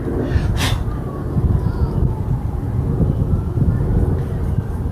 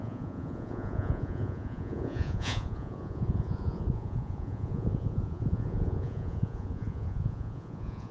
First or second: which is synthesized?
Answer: second